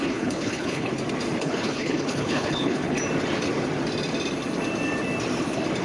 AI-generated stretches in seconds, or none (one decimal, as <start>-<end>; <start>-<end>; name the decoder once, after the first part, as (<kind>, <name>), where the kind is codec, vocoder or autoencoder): 0.0-0.9 (codec, HILCodec); 1.4-3.0